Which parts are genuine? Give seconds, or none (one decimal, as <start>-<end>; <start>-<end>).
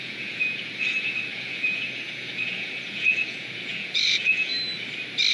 4.5-5.3